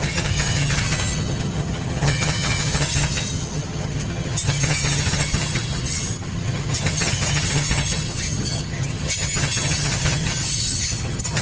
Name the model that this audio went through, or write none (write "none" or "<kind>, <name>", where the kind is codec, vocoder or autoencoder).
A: vocoder, HiFi-GAN